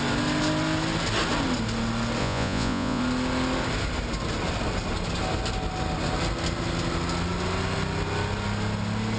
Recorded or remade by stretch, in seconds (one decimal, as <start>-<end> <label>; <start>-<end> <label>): 0.0-2.2 recorded; 2.2-3.0 remade; 3.0-9.2 recorded

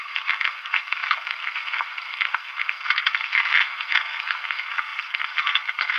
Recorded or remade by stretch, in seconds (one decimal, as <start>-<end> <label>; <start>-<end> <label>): 0.0-6.0 remade

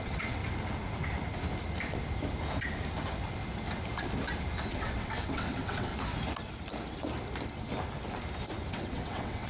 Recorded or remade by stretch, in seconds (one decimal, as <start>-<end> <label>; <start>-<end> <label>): 0.0-0.4 remade; 0.4-4.7 recorded; 4.7-5.9 remade; 5.9-8.7 recorded; 8.7-9.5 remade